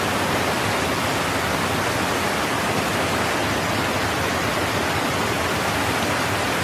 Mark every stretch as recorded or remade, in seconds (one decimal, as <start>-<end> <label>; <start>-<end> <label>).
0.0-6.6 recorded